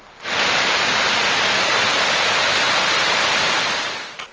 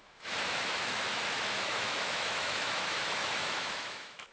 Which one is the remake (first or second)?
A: second